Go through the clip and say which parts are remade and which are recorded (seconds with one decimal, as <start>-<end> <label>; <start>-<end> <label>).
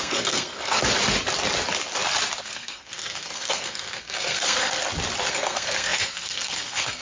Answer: 0.0-0.8 remade; 0.8-2.4 recorded; 2.4-4.8 remade; 4.8-5.3 recorded; 5.3-7.0 remade